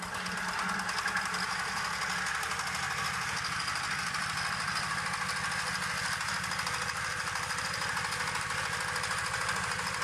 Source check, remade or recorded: recorded